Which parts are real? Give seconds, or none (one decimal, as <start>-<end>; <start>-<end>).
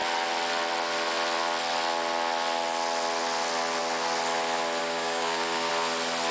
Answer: 0.0-4.8; 5.7-6.3